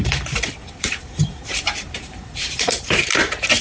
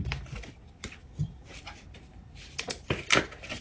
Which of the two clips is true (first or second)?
second